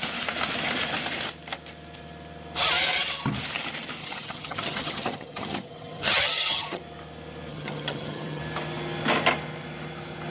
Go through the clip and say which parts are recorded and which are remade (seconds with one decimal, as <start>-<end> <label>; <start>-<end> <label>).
0.0-4.0 recorded; 4.0-6.8 remade; 6.8-7.5 recorded; 7.5-8.4 remade; 8.4-10.3 recorded